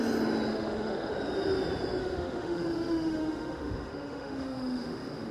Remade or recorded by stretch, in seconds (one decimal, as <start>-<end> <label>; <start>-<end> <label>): 0.0-0.5 recorded; 0.5-1.1 remade; 1.1-2.0 recorded; 2.0-5.3 remade

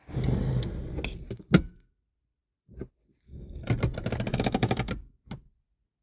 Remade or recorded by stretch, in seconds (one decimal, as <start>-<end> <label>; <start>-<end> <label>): 0.0-4.3 recorded; 4.3-4.9 remade; 4.9-6.0 recorded

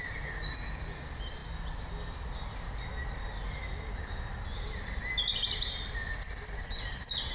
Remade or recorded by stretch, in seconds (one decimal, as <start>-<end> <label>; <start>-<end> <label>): 0.0-7.3 recorded

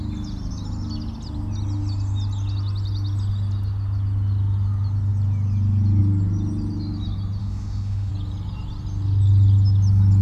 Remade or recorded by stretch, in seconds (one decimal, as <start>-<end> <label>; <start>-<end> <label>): 0.0-7.4 recorded; 7.4-8.1 remade; 8.1-10.2 recorded